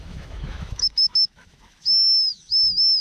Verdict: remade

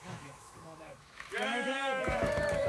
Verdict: remade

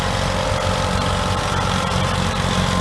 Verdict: recorded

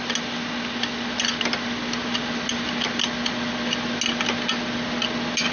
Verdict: recorded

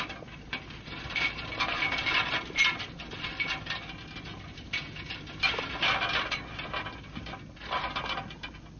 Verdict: recorded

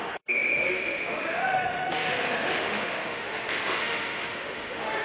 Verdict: remade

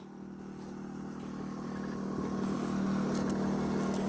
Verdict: recorded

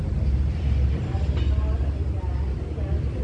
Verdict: recorded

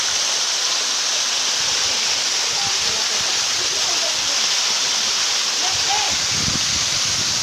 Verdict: recorded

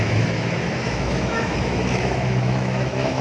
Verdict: remade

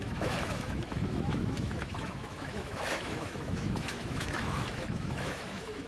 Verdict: remade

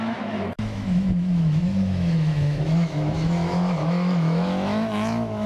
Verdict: remade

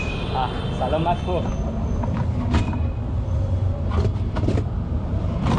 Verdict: recorded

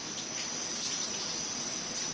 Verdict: recorded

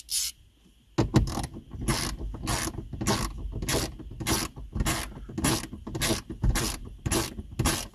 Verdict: recorded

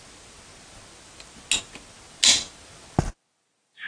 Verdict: recorded